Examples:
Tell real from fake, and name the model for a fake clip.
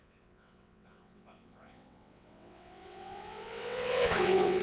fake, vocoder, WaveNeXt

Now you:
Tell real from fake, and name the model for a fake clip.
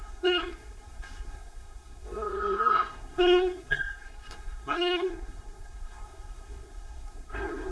fake, codec, SNAC